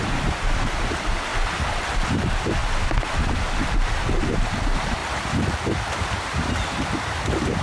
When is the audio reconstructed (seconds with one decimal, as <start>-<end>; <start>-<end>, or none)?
0.0-1.3; 2.1-2.6; 4.6-5.0; 5.5-7.6